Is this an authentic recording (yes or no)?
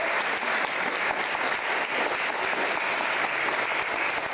yes